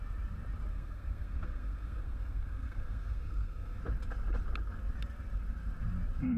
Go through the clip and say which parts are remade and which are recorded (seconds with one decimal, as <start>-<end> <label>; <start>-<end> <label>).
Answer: 0.0-0.7 recorded; 0.7-3.8 remade; 3.8-6.4 recorded